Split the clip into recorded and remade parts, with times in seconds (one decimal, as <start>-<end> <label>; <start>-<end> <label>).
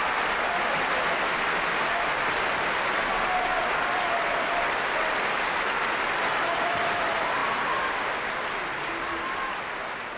0.0-10.2 recorded